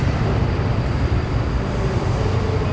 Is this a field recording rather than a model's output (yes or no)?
yes